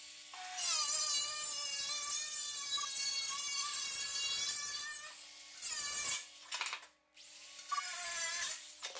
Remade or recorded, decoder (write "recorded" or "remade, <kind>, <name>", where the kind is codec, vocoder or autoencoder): recorded